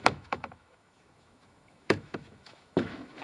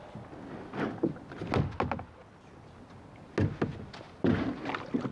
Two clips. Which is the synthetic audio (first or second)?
first